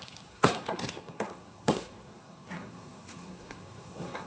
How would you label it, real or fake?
fake